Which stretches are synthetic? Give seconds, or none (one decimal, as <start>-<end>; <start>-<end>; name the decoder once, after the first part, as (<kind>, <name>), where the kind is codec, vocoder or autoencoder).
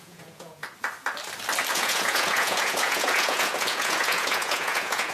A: 0.0-0.6 (vocoder, Vocos); 1.7-5.1